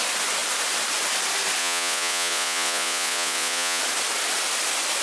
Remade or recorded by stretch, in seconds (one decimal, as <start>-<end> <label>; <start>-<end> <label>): 0.0-1.6 recorded; 1.6-3.8 remade; 3.8-5.0 recorded